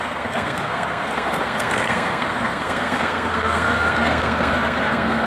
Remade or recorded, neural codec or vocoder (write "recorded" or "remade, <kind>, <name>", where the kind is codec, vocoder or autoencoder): remade, codec, SNAC